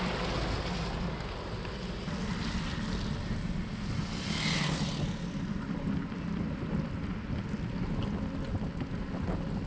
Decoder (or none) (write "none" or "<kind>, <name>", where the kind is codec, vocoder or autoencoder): none